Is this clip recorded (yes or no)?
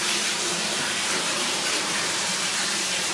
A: no